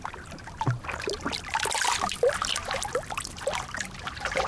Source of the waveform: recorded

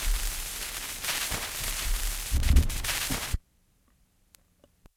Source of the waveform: remade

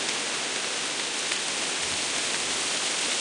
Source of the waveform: recorded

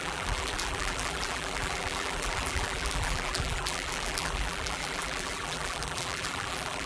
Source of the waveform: remade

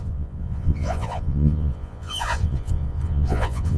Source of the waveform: remade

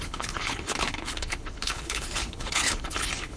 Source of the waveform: remade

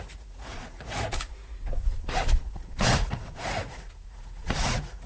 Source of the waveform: remade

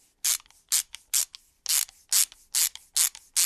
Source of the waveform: recorded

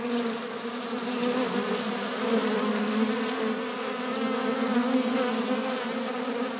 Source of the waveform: recorded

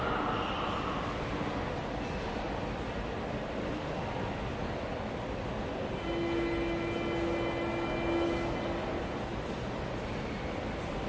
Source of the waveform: recorded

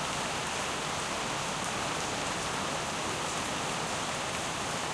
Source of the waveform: recorded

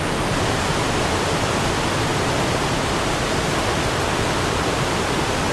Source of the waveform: recorded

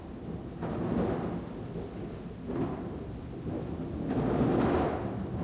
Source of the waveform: recorded